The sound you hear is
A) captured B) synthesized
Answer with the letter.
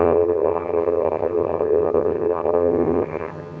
B